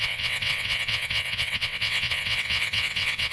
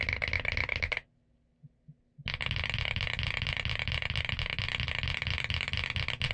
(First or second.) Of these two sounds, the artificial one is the first